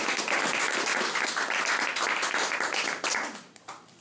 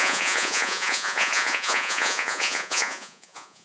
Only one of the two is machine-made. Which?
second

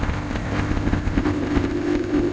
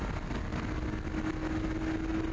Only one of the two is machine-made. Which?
first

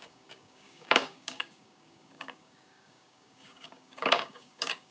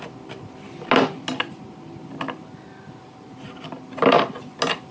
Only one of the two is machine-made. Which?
first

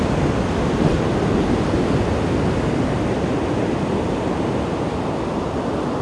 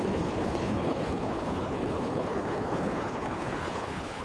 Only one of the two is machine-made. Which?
second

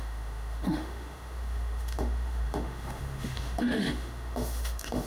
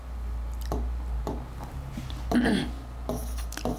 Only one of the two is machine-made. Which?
first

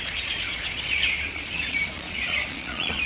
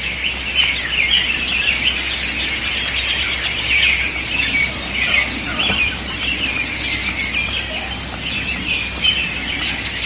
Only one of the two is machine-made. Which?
first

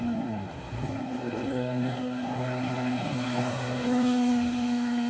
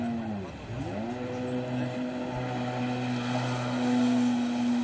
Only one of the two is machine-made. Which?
first